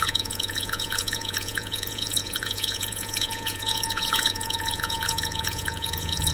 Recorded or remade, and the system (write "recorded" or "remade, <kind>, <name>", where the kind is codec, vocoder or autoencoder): remade, vocoder, Vocos